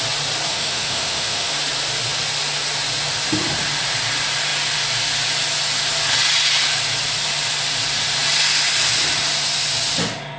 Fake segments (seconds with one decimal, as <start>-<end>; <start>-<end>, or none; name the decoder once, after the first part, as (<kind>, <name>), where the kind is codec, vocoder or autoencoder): 0.5-1.5 (autoencoder, DAC-VAE)